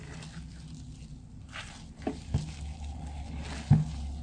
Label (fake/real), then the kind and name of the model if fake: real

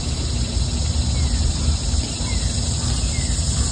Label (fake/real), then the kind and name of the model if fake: real